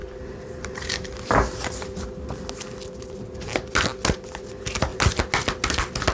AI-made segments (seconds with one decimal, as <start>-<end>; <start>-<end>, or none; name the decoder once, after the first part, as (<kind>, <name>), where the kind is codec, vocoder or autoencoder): none